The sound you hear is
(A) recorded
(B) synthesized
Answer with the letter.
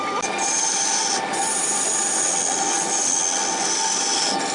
A